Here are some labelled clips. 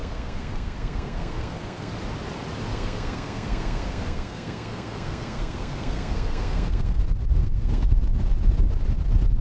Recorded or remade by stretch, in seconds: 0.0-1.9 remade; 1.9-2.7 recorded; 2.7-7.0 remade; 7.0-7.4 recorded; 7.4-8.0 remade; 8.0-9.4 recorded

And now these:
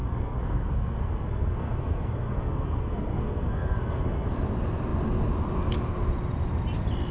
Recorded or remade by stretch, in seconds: 0.0-4.3 remade; 4.3-7.1 recorded